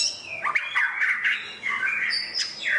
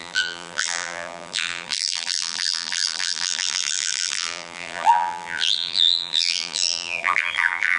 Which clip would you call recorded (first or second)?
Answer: first